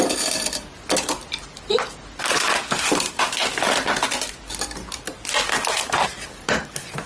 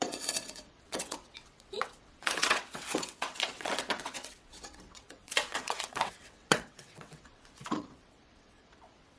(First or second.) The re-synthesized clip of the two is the second